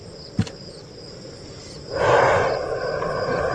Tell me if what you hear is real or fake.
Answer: real